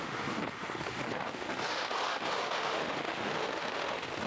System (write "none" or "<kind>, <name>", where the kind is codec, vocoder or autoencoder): autoencoder, DAC-VAE